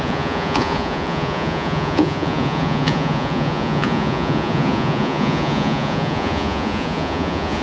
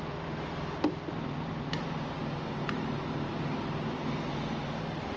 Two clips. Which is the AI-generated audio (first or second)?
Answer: first